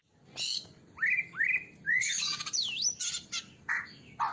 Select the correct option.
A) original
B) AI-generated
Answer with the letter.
A